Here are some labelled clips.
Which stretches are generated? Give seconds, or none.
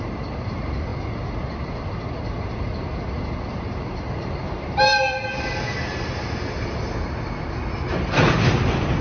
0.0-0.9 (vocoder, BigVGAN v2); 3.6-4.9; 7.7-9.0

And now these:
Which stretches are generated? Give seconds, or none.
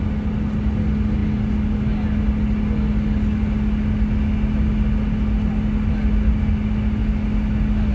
none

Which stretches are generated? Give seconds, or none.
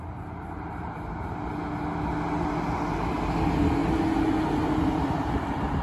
none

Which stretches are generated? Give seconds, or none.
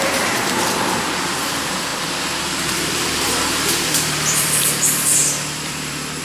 0.0-1.9 (vocoder, BigVGAN v2); 2.4-6.2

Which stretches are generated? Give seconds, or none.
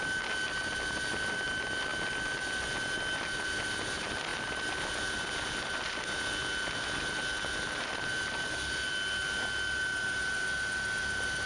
none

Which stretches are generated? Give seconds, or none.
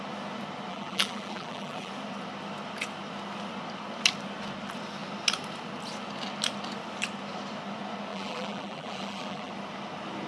0.7-1.9 (vocoder, BigVGAN v2); 8.1-9.5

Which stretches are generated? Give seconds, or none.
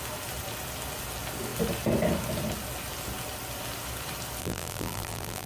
4.4-5.5 (vocoder, BigVGAN v2)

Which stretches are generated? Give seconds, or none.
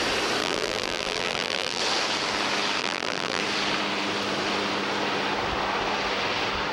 0.4-1.8 (vocoder, BigVGAN v2); 2.8-3.4